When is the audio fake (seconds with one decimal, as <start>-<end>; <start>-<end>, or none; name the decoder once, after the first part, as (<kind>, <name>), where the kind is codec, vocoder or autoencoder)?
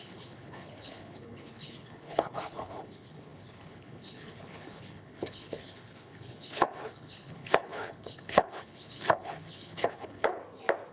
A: 0.0-10.4 (codec, HILCodec)